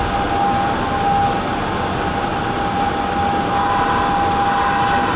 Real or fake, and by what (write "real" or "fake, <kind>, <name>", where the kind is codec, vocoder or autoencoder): real